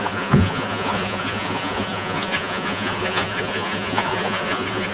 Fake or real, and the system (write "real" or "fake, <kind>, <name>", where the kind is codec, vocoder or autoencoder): fake, vocoder, Vocos